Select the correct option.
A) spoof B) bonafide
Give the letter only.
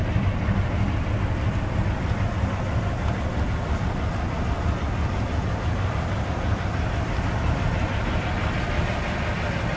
B